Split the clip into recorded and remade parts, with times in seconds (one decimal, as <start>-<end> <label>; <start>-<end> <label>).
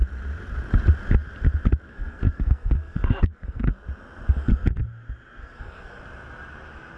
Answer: 0.0-1.9 recorded; 1.9-3.7 remade; 3.7-5.4 recorded; 5.4-6.0 remade; 6.0-7.0 recorded